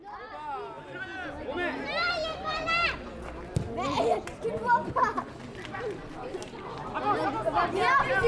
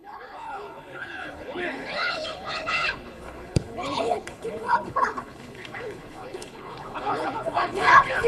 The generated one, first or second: second